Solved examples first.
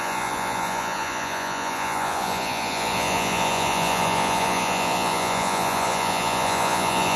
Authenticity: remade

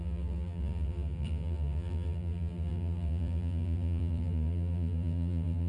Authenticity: remade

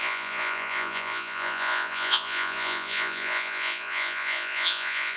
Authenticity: remade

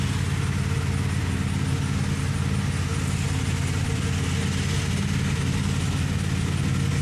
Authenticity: recorded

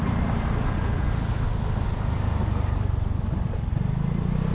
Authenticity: recorded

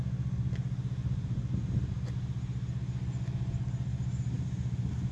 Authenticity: recorded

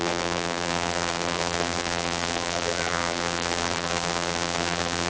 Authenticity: remade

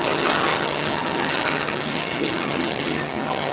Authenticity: remade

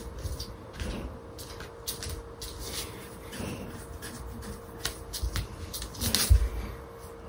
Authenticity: recorded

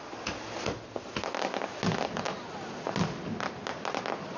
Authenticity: recorded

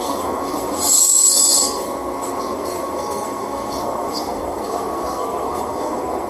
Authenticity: remade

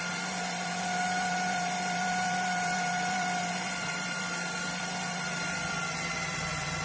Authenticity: remade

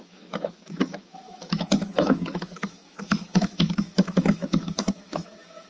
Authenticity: remade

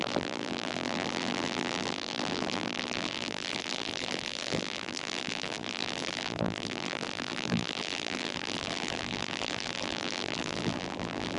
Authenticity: remade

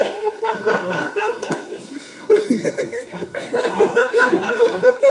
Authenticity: remade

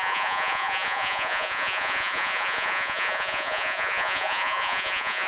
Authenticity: remade